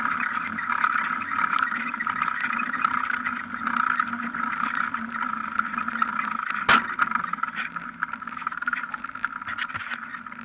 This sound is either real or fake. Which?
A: real